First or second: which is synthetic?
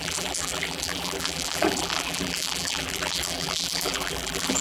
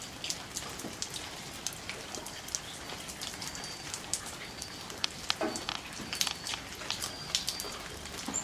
first